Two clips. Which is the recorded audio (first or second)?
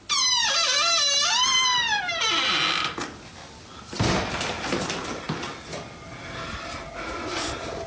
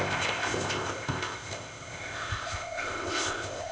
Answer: first